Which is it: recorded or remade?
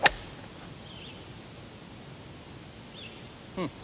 recorded